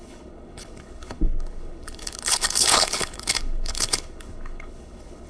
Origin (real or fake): fake